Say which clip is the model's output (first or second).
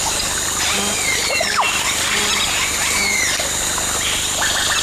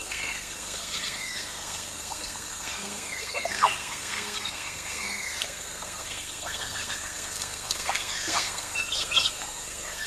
second